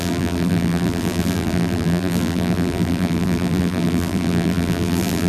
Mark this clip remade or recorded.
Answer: remade